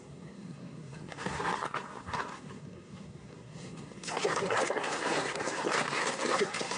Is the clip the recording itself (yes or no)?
no